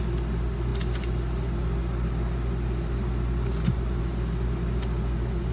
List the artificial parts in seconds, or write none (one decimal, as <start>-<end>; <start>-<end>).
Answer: none